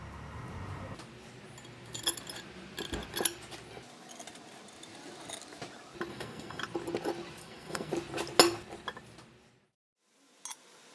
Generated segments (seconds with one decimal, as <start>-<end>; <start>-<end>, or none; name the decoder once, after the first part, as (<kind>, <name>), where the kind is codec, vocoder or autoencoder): 6.1-6.6 (codec, SNAC); 7.4-7.9